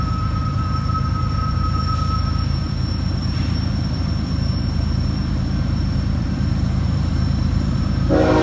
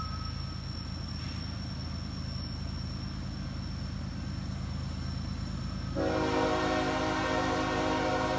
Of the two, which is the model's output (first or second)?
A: first